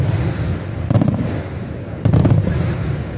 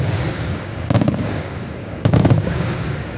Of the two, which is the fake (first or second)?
second